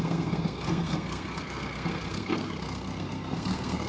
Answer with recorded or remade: remade